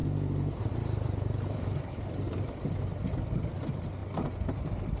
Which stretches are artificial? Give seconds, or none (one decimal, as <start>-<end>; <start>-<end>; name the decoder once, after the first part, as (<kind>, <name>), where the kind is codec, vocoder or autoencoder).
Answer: 0.0-2.7 (vocoder, BigVGAN v2)